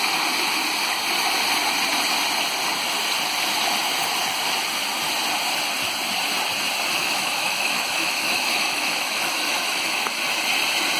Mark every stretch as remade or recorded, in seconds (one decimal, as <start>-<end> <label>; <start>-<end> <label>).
0.0-7.0 recorded; 7.0-10.1 remade; 10.1-11.0 recorded